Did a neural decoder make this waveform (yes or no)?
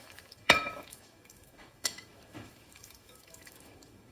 yes